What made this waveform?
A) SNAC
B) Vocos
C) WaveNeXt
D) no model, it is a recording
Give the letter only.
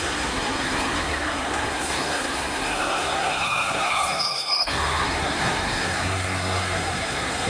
A